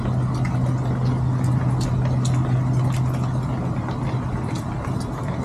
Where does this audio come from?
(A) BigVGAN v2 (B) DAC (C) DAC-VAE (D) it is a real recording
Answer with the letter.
D